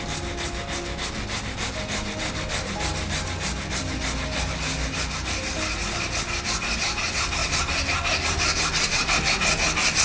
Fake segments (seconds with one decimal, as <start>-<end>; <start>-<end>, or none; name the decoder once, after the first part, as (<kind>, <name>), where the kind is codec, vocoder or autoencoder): 7.4-9.1 (vocoder, BigVGAN v2)